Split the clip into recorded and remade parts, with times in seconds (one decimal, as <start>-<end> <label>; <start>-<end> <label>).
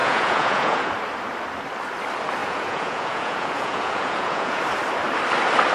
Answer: 0.0-0.9 remade; 0.9-2.4 recorded; 2.4-4.6 remade; 4.6-5.7 recorded